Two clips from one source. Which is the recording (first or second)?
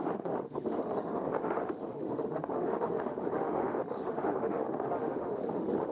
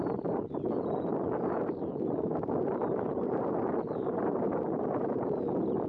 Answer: second